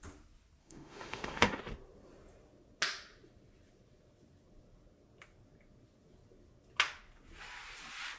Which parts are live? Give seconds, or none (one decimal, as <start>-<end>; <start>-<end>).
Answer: 0.0-0.6; 1.6-8.2